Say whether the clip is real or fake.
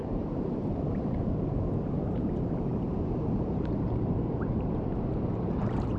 fake